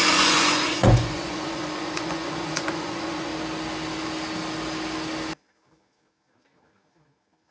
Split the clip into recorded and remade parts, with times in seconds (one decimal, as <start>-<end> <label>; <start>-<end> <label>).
0.0-3.3 remade; 3.3-7.5 recorded